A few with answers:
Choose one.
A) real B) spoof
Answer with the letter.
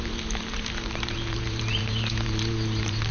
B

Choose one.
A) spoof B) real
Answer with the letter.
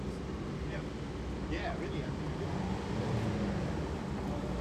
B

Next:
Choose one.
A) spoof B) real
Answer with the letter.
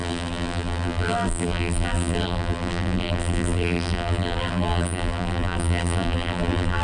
A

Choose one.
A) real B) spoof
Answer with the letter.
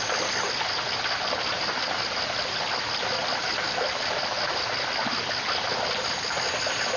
A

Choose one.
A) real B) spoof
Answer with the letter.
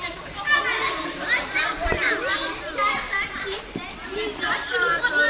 B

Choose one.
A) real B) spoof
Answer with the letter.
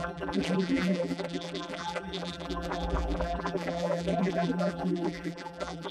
B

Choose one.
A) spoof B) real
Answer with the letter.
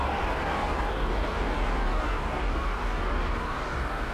A